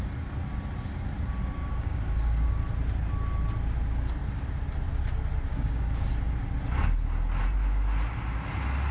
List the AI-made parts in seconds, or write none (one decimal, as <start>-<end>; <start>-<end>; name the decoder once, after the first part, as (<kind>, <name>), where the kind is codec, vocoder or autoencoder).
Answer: 1.6-2.6 (codec, DAC); 5.5-6.1